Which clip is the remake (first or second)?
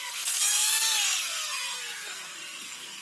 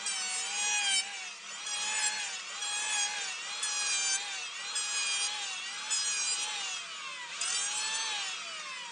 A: first